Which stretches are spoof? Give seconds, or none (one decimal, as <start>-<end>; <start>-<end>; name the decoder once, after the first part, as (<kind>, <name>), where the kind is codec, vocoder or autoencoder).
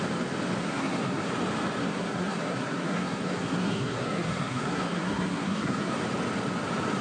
0.6-1.3 (codec, SNAC); 1.8-6.0